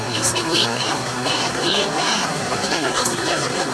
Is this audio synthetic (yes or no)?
yes